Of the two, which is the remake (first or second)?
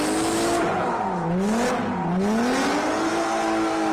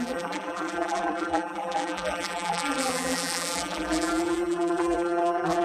second